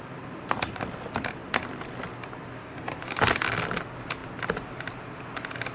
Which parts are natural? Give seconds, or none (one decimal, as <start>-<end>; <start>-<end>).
0.0-2.6; 3.2-5.7